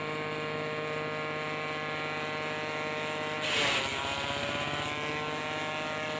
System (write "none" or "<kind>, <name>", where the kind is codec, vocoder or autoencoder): none